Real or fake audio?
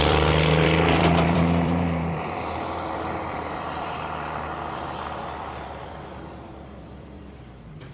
fake